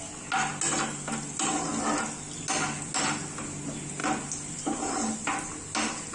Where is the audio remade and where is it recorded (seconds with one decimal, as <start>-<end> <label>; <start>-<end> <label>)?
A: 0.0-6.1 recorded